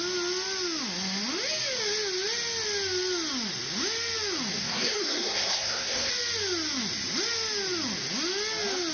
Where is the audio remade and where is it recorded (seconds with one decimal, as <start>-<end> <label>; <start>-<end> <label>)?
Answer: 0.0-4.6 recorded; 4.6-6.1 remade; 6.1-8.9 recorded